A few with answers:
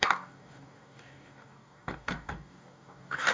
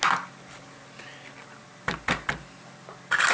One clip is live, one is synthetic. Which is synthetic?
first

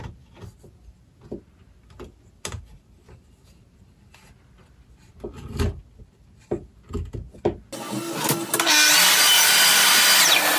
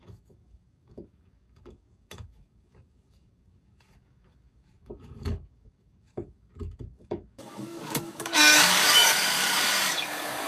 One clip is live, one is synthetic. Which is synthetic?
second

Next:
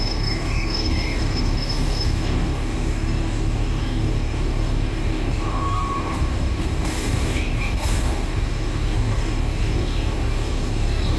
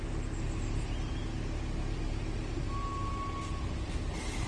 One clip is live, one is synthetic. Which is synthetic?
first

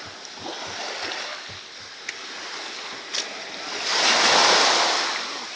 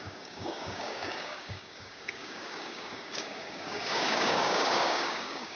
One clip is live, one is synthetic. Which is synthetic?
second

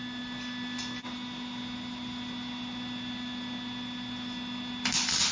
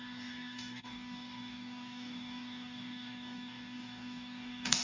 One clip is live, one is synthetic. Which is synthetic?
second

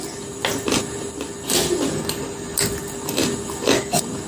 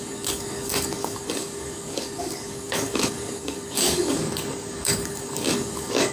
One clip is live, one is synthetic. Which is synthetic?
second